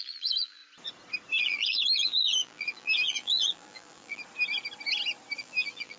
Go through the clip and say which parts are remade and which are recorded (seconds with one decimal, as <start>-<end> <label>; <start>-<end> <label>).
0.0-0.6 remade; 0.6-1.4 recorded; 1.4-4.2 remade; 4.2-5.4 recorded; 5.4-6.0 remade